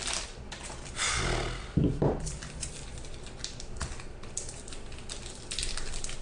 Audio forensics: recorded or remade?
recorded